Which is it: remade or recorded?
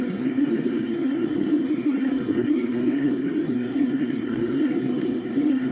remade